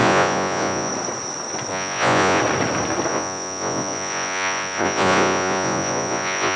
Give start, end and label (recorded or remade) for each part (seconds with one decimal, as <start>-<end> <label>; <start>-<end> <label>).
0.0-0.9 remade; 0.9-1.7 recorded; 1.7-2.4 remade; 2.4-3.1 recorded; 3.1-6.6 remade